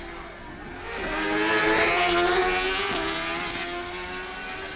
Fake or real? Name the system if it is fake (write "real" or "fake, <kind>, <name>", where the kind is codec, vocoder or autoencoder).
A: real